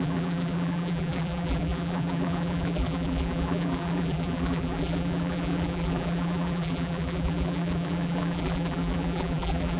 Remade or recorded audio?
remade